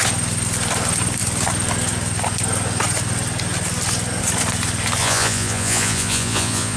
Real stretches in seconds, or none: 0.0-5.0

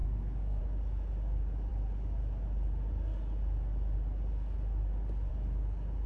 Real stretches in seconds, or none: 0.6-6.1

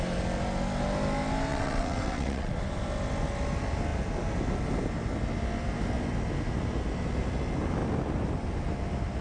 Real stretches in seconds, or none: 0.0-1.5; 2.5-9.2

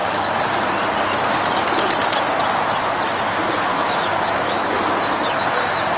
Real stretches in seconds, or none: 0.0-3.7; 4.9-6.0

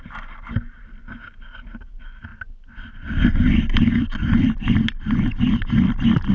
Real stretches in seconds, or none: 0.0-6.3

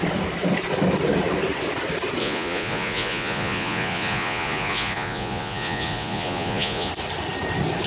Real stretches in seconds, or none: 0.0-2.2; 6.9-7.9

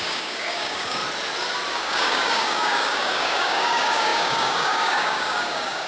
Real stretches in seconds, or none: 1.0-1.7